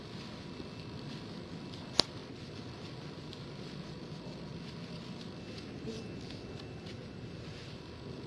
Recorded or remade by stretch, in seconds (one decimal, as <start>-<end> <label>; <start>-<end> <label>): 0.0-8.3 recorded